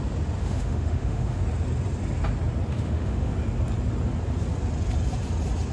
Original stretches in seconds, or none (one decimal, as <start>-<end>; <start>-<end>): 0.0-0.4; 1.4-2.7; 3.3-5.7